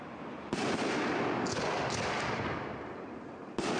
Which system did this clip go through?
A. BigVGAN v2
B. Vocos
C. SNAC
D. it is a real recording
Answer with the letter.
D